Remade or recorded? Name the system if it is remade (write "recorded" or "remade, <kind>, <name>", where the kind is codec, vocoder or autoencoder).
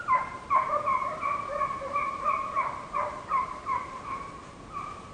remade, vocoder, BigVGAN v2